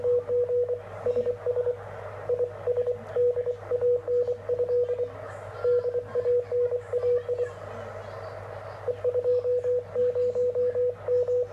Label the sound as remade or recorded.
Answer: recorded